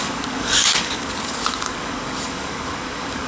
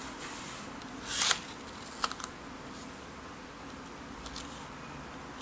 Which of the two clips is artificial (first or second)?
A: first